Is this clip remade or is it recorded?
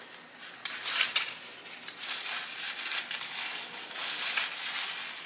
recorded